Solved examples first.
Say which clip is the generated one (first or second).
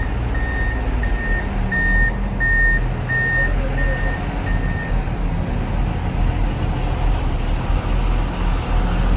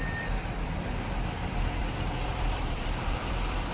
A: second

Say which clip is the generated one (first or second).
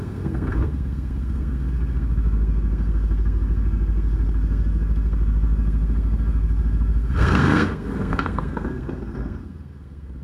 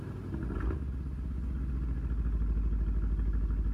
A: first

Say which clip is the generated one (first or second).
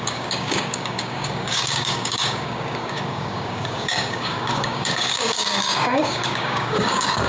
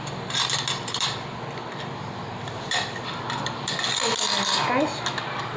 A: first